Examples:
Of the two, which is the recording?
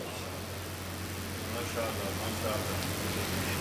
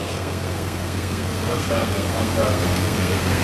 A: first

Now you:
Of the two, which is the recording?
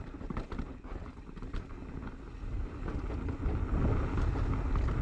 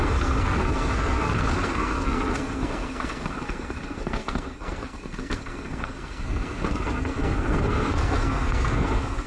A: first